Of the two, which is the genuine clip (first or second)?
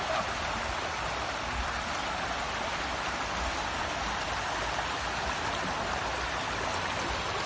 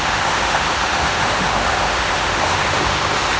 first